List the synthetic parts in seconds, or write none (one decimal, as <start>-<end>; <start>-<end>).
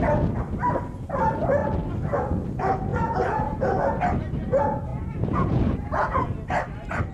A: 2.9-3.6; 4.9-6.3